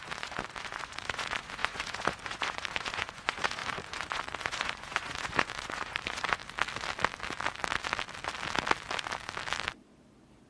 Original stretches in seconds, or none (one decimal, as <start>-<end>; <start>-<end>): 6.4-10.5